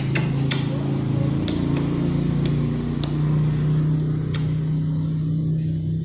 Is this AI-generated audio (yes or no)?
no